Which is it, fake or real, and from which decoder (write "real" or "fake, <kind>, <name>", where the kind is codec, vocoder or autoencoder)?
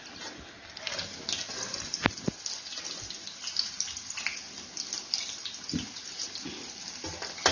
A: real